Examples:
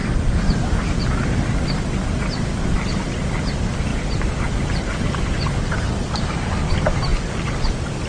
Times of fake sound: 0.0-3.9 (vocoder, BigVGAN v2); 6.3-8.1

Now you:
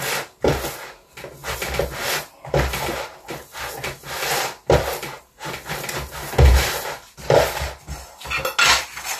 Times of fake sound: none

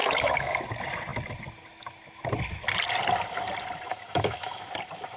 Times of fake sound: 0.0-0.6 (autoencoder, DAC-VAE); 3.9-4.7

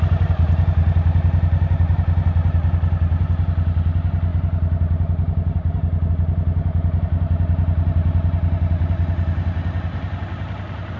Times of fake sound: none

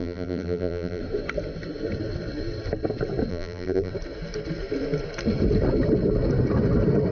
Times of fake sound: 0.0-1.0 (vocoder, BigVGAN v2); 3.3-3.9